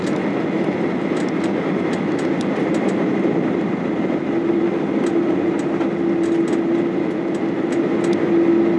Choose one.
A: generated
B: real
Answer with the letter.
B